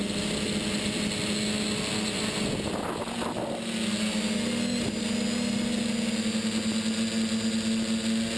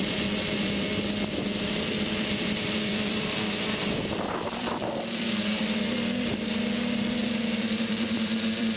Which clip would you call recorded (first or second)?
first